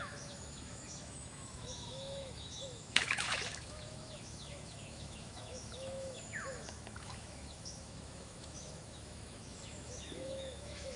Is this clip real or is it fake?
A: fake